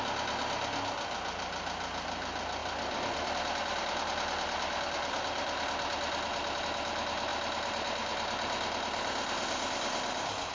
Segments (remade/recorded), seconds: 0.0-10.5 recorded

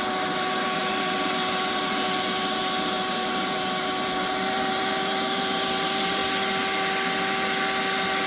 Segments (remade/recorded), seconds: 0.0-6.2 remade; 6.2-8.3 recorded